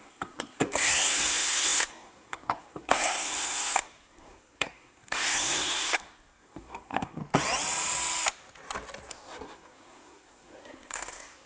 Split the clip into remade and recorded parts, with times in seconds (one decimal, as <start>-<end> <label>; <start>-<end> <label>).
0.0-7.2 remade; 7.2-9.1 recorded; 9.1-11.5 remade